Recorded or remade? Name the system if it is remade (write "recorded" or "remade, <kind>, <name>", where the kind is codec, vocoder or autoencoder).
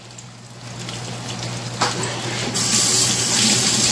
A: recorded